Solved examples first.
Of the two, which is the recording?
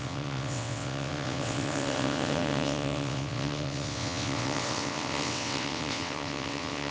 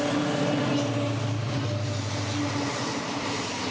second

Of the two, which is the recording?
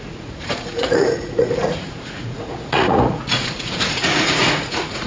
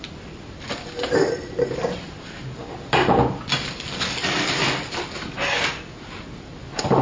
second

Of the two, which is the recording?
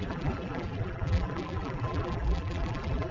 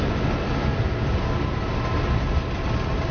second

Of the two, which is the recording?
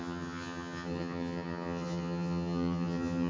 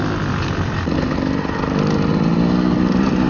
second